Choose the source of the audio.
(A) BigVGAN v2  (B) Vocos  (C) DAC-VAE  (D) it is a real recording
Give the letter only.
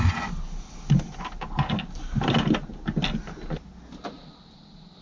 D